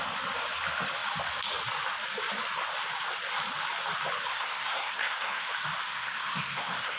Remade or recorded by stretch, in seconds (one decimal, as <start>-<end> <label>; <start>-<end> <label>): 0.0-4.3 recorded; 4.3-5.5 remade; 5.5-5.9 recorded; 5.9-7.0 remade